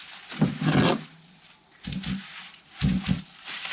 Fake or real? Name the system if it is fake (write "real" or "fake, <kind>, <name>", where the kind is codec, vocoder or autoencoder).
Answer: real